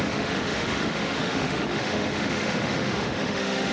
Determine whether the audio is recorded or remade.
remade